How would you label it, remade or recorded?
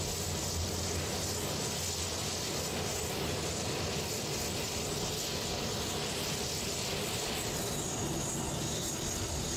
recorded